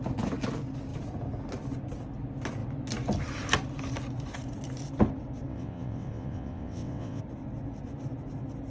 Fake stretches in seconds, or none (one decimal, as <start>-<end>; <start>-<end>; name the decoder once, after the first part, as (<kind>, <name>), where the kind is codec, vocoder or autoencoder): 5.5-7.2 (vocoder, WaveNeXt)